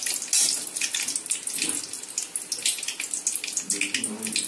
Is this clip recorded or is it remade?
recorded